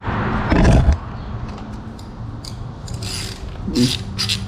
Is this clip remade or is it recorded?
recorded